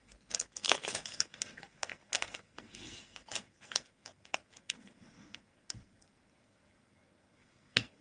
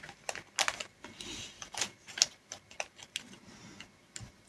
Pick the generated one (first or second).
first